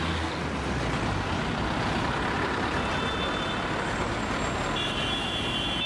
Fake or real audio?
real